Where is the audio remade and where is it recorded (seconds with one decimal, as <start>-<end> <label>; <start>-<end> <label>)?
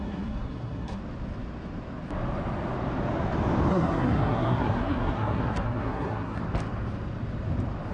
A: 0.0-1.0 remade; 1.0-3.7 recorded; 3.7-6.4 remade; 6.4-7.9 recorded